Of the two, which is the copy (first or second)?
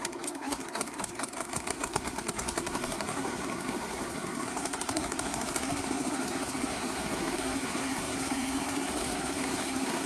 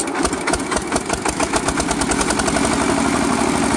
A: first